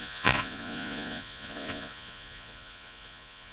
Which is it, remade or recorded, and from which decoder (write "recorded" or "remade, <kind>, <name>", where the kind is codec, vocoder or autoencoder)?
remade, vocoder, Vocos